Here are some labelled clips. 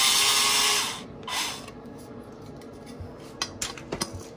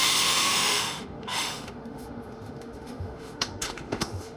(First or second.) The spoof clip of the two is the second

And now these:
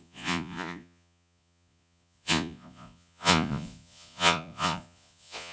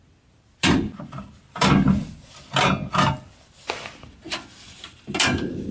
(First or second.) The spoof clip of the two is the first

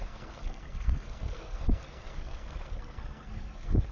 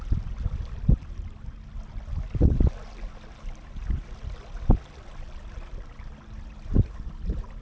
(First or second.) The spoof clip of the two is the first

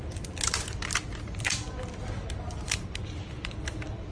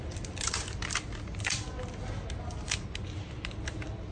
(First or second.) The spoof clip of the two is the first